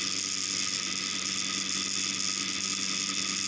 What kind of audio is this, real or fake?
real